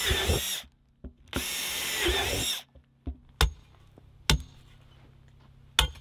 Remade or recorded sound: recorded